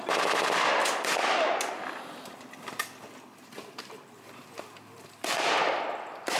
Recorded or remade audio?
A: recorded